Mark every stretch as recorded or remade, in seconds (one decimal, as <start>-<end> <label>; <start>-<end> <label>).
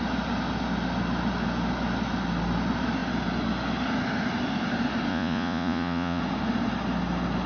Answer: 0.0-5.1 recorded; 5.1-6.2 remade; 6.2-7.5 recorded